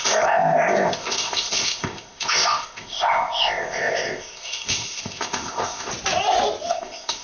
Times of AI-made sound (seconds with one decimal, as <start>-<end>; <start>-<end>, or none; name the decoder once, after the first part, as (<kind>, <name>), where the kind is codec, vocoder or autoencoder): 0.0-5.9 (codec, ZipCodec); 6.7-7.2